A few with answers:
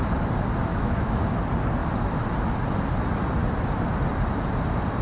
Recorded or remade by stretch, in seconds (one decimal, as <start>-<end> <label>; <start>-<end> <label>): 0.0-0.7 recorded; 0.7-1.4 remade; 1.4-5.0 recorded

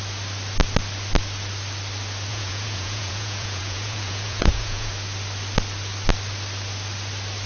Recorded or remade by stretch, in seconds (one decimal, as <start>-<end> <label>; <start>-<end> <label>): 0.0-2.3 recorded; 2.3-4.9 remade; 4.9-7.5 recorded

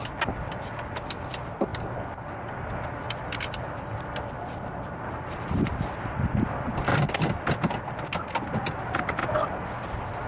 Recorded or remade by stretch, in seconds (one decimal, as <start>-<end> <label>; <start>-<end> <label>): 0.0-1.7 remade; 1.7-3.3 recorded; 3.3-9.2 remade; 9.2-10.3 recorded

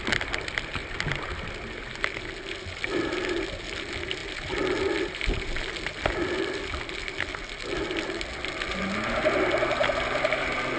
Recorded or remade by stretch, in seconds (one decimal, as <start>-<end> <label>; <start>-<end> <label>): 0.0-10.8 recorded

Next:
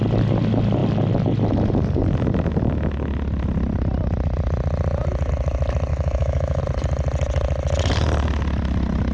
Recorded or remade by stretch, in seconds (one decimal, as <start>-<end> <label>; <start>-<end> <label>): 0.0-5.9 recorded; 5.9-6.6 remade; 6.6-9.1 recorded

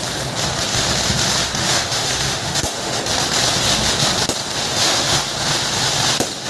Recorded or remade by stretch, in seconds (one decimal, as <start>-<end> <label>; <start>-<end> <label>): 0.0-1.6 recorded; 1.6-3.0 remade; 3.0-4.7 recorded; 4.7-5.2 remade; 5.2-6.5 recorded

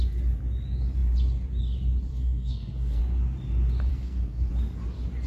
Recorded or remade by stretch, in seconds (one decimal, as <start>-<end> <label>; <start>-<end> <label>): 0.0-2.1 recorded; 2.1-3.0 remade; 3.0-3.9 recorded; 3.9-4.5 remade; 4.5-5.3 recorded

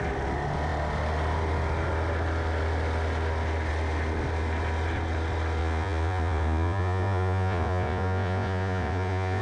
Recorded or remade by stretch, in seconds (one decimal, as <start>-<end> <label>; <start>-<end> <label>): 0.0-5.6 recorded; 5.6-9.4 remade